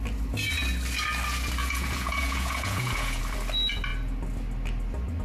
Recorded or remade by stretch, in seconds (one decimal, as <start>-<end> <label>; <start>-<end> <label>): 0.0-1.6 recorded; 1.6-3.2 remade; 3.2-5.2 recorded